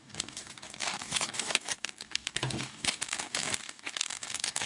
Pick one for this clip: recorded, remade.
remade